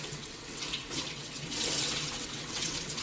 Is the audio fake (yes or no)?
yes